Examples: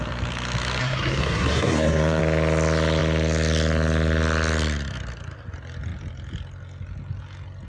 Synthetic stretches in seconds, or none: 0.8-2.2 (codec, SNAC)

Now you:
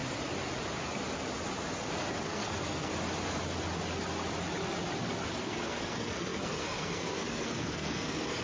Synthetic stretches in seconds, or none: 2.2-2.9 (codec, SNAC); 5.4-8.4

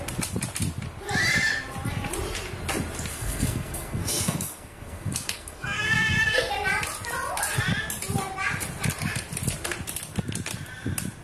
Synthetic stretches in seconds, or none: 3.1-6.5 (codec, SNAC)

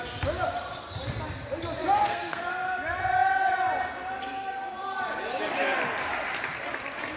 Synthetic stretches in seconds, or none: 2.0-2.5 (codec, SNAC)

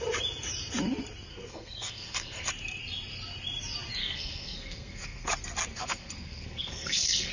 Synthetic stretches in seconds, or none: 1.3-2.5 (codec, SNAC); 4.0-5.3; 5.7-7.3